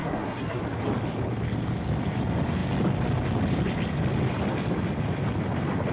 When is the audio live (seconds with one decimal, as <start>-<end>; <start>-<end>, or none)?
0.6-5.9